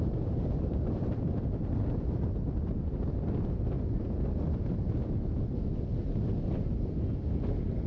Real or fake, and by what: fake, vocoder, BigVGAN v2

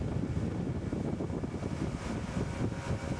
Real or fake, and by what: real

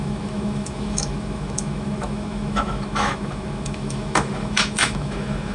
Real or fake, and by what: fake, autoencoder, DAC-VAE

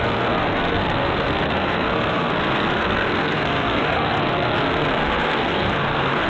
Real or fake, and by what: fake, codec, SNAC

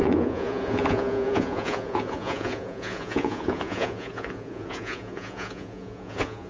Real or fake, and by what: fake, vocoder, Vocos